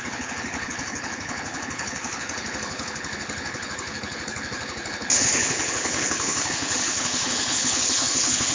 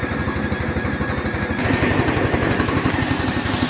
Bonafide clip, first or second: second